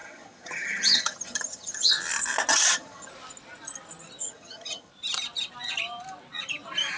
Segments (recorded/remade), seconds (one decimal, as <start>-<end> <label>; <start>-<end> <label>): 0.0-1.9 remade; 1.9-2.5 recorded; 2.5-3.1 remade; 3.1-4.2 recorded; 4.2-4.9 remade; 4.9-7.0 recorded